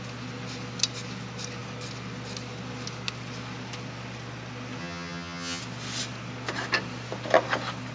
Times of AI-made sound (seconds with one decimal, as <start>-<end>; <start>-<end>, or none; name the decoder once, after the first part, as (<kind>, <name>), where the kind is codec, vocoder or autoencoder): 4.8-5.6 (vocoder, HiFi-GAN)